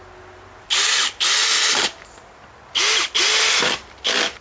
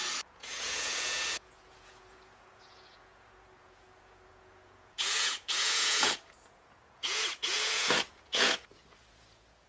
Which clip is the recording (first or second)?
first